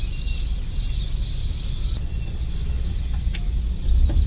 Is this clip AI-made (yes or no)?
no